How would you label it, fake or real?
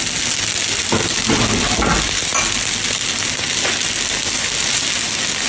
real